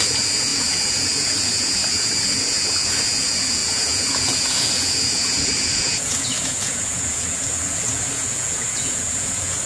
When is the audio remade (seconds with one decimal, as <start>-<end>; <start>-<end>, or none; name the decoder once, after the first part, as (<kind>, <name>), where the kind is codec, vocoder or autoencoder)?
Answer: 0.0-9.7 (vocoder, Vocos)